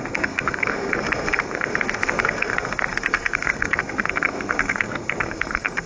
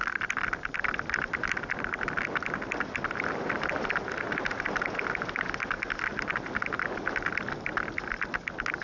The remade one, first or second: first